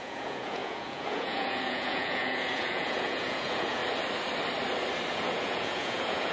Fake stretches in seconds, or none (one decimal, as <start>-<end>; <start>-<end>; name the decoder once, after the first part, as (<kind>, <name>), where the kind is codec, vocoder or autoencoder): 0.0-3.8 (vocoder, Vocos); 5.1-6.3